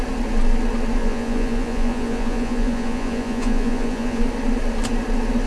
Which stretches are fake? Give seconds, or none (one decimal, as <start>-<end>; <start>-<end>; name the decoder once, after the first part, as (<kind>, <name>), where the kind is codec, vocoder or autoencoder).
1.0-4.2 (vocoder, Vocos)